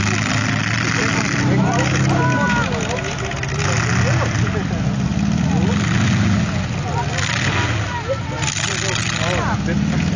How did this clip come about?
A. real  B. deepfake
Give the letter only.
A